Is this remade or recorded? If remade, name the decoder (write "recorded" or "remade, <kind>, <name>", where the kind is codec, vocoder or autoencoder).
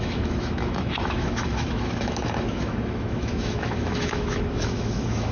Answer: remade, autoencoder, DAC-VAE